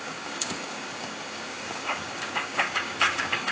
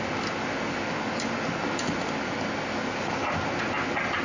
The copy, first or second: first